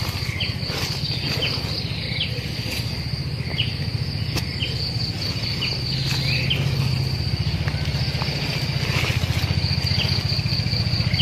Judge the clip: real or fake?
real